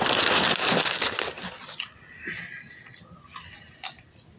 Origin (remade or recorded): recorded